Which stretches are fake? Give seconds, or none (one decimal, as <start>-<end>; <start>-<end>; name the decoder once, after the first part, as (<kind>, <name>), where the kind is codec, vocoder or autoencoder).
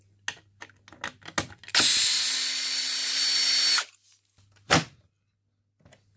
none